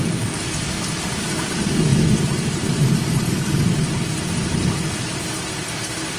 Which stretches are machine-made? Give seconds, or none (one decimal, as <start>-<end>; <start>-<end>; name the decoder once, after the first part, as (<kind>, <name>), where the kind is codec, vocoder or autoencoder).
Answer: 1.9-5.6 (vocoder, BigVGAN v2)